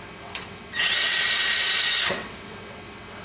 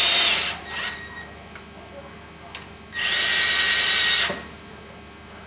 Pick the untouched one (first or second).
second